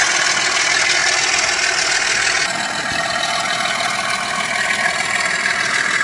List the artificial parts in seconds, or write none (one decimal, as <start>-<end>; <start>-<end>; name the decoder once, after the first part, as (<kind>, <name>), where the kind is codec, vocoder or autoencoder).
none